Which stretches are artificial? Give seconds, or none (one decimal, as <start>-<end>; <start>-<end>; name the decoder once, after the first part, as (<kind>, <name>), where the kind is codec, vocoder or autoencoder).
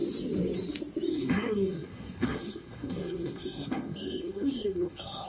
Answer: 1.1-5.3 (codec, SNAC)